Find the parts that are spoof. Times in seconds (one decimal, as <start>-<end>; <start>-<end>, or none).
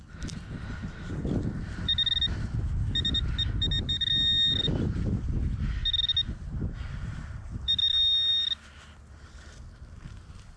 none